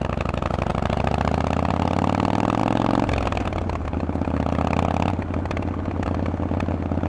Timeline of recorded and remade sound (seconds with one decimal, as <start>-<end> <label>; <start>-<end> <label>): 0.0-7.1 recorded